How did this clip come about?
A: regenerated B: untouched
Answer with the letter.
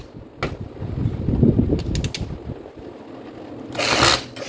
B